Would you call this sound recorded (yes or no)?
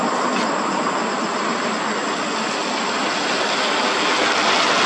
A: yes